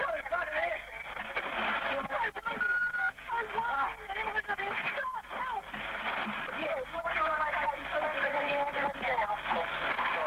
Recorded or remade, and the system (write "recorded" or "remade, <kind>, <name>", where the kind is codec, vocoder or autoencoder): recorded